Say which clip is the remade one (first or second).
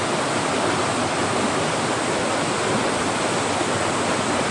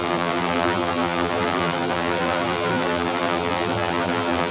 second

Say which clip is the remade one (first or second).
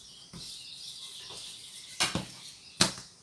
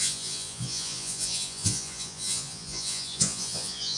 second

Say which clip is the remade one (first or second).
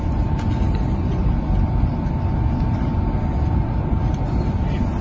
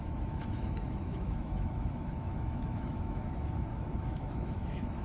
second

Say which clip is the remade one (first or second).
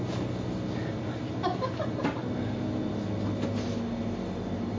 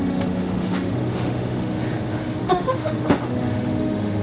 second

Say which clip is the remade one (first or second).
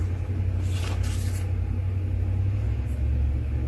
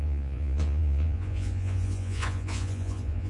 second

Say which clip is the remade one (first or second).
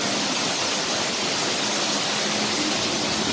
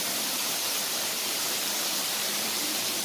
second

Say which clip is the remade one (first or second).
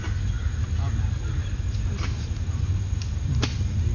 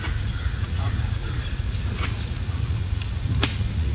second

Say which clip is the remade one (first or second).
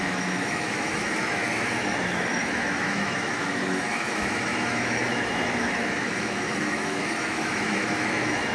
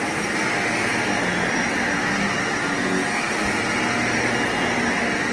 first